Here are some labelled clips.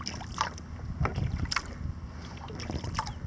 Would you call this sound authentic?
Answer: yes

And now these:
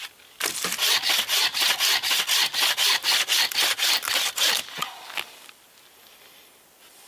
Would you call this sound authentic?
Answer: yes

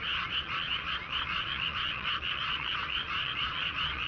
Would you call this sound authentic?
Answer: no